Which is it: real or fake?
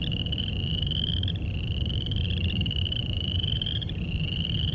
fake